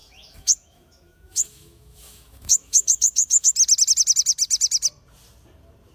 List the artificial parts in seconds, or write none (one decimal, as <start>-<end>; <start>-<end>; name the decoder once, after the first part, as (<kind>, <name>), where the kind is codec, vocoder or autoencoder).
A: 0.0-3.5 (autoencoder, DAC-VAE)